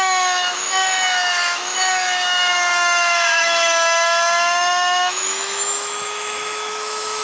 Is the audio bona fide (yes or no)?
no